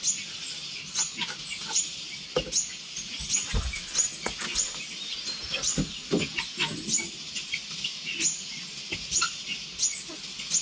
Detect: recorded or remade recorded